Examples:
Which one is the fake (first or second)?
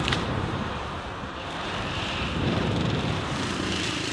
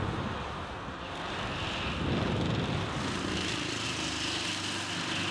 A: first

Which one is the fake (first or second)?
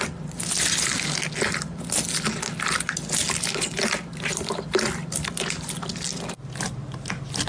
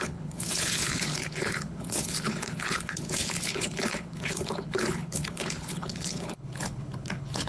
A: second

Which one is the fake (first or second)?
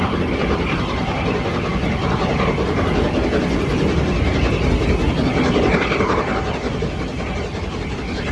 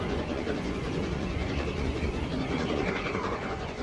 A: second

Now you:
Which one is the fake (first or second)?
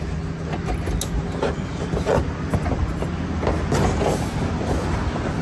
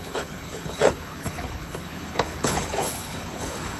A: second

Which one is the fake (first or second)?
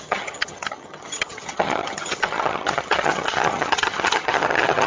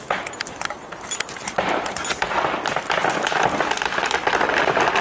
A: first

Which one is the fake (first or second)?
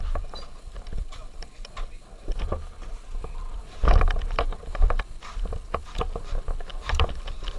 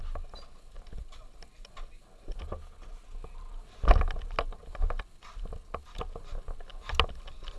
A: first